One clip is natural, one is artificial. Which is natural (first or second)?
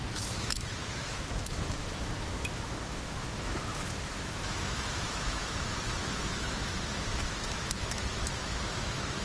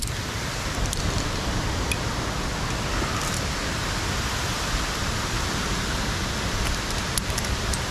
second